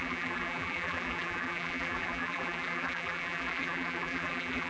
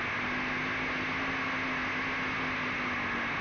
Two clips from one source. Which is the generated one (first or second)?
first